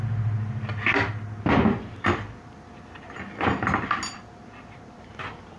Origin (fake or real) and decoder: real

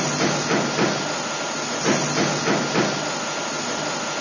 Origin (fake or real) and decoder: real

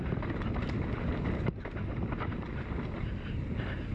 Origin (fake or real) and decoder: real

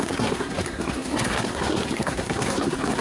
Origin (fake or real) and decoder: fake, codec, SNAC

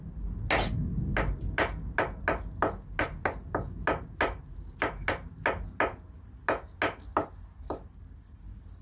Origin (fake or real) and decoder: real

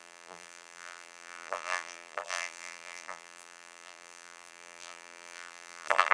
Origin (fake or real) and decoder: fake, vocoder, BigVGAN v2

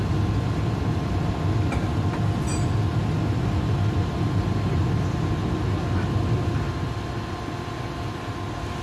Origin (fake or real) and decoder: real